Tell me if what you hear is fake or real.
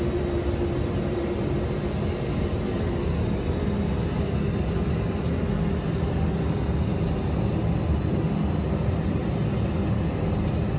real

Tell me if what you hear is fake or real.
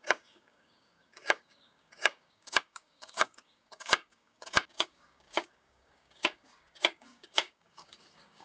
fake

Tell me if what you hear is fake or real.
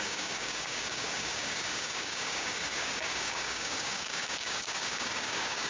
fake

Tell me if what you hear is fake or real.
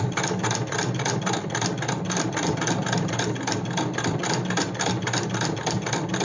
real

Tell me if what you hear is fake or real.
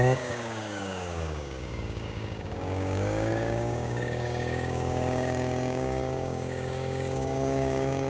fake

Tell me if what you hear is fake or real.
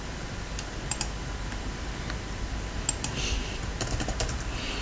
real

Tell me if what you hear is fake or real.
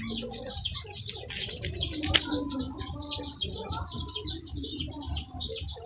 real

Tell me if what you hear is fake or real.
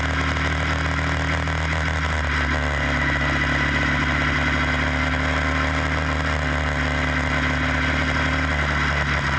real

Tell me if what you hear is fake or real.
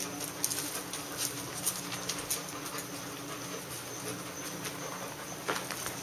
real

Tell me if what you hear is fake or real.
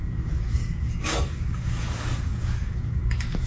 fake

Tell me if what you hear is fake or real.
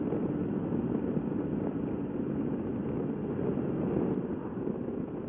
real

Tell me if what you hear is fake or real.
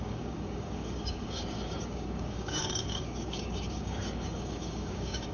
fake